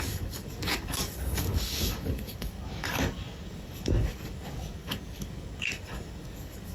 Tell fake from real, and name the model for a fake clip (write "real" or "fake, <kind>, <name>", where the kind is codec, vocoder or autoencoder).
fake, codec, DAC